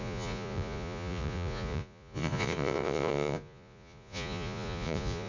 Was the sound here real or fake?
fake